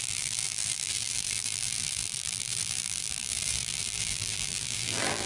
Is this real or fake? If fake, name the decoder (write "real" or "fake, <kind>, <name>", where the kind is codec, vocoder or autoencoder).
fake, vocoder, BigVGAN v2